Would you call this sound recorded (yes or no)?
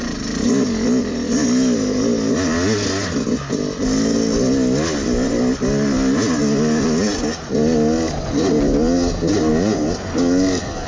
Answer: yes